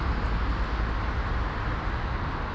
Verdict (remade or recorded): recorded